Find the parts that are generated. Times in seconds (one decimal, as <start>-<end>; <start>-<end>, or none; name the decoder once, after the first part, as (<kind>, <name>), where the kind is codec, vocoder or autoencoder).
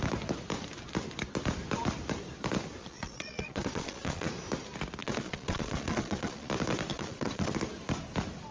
2.8-4.3 (vocoder, Vocos); 5.0-6.5; 6.9-7.5